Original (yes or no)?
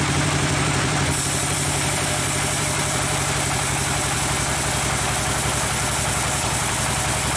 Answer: no